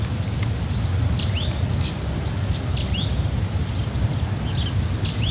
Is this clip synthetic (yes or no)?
no